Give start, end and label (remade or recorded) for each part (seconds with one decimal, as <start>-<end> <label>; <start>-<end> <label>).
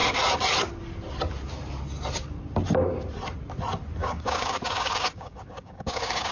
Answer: 0.0-4.0 recorded; 4.0-6.3 remade